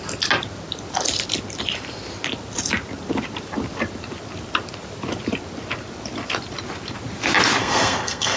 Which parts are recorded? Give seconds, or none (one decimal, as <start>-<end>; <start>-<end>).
0.0-7.6